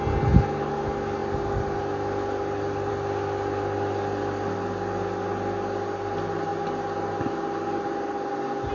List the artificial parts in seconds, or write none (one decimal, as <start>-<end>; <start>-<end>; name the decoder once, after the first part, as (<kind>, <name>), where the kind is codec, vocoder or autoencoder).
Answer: none